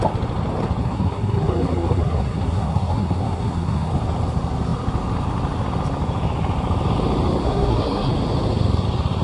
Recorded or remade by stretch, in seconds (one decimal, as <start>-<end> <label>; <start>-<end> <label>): 0.0-0.8 recorded; 0.8-3.9 remade; 3.9-7.4 recorded; 7.4-8.1 remade; 8.1-9.2 recorded